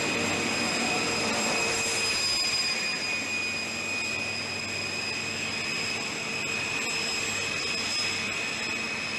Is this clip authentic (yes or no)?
yes